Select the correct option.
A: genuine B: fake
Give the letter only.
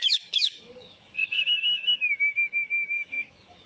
B